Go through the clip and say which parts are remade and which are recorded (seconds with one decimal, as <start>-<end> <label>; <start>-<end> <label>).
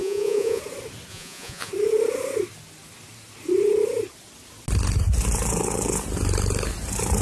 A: 0.0-0.6 remade; 0.6-1.1 recorded; 1.1-1.7 remade; 1.7-7.2 recorded